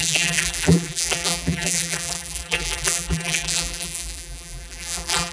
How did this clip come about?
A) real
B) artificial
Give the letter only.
B